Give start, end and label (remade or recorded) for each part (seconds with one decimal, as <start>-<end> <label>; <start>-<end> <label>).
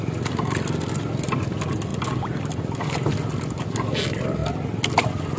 0.0-5.4 recorded